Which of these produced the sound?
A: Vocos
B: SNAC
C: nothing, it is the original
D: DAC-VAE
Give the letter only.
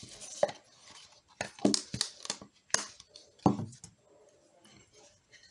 C